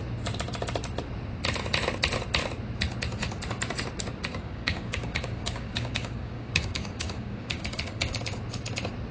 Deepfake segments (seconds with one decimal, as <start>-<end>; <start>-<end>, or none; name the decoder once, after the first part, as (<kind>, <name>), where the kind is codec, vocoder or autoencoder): 4.3-8.2 (codec, DAC)